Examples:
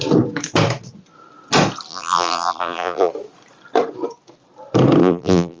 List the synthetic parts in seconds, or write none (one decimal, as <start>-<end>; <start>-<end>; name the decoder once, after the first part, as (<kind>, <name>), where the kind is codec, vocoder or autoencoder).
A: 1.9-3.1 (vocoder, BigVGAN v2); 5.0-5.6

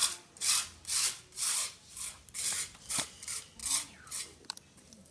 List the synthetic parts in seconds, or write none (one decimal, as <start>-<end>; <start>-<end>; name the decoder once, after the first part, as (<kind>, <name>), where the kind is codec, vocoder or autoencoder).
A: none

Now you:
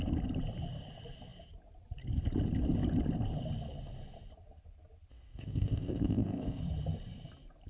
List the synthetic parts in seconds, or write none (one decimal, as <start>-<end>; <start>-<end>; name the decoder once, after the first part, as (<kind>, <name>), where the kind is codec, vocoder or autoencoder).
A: 5.1-6.6 (codec, ZipCodec)